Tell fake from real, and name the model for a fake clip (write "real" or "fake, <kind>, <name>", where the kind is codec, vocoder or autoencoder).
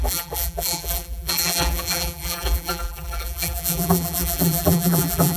fake, vocoder, BigVGAN v2